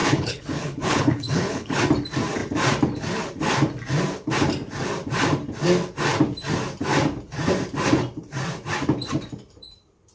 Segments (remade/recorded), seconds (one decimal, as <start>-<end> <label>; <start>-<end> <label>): 0.0-1.8 remade; 1.8-10.1 recorded